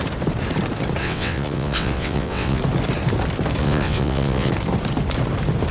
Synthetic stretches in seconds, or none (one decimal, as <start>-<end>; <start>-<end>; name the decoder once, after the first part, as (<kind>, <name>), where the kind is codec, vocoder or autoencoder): 1.0-2.6 (vocoder, WaveNeXt); 3.6-4.5